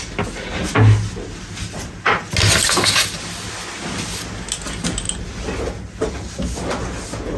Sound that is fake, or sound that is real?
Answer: real